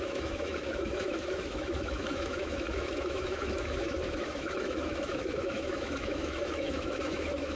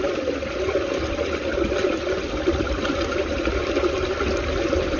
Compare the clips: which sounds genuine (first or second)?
second